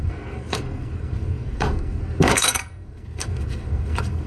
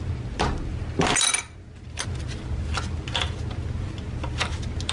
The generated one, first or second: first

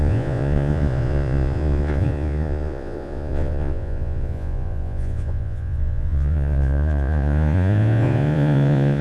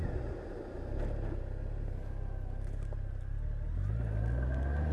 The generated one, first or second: first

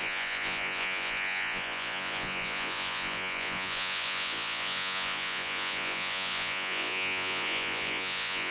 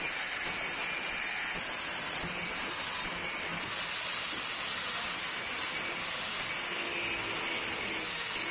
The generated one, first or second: first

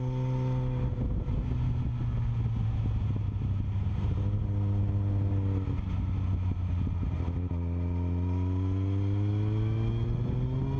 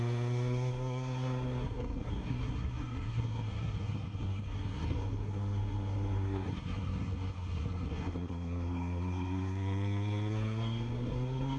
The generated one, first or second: second